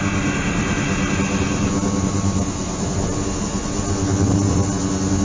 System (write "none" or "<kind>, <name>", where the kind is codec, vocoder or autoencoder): none